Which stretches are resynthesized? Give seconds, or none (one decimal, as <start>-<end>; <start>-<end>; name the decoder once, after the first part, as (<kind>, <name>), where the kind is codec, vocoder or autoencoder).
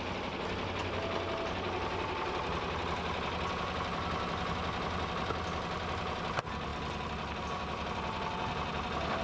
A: none